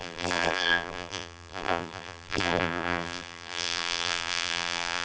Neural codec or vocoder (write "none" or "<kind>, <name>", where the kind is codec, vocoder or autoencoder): vocoder, BigVGAN v2